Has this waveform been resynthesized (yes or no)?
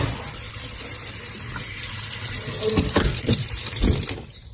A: yes